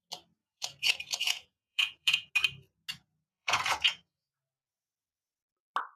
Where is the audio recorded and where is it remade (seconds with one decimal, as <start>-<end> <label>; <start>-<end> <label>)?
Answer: 0.0-0.4 recorded; 0.4-2.3 remade; 2.3-3.3 recorded; 3.3-4.3 remade; 4.3-6.0 recorded